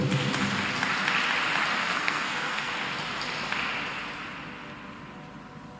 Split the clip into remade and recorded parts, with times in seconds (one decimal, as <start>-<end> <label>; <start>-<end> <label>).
0.0-1.8 recorded; 1.8-2.7 remade; 2.7-5.8 recorded